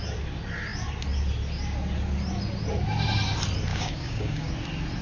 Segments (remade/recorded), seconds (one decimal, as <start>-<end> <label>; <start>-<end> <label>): 0.0-3.7 recorded; 3.7-4.5 remade; 4.5-5.0 recorded